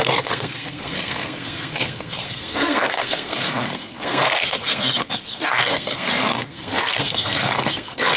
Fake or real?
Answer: fake